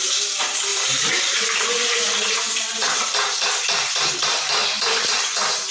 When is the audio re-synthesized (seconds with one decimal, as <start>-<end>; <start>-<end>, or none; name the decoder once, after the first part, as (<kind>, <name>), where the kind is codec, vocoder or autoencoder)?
0.0-5.7 (vocoder, BigVGAN v2)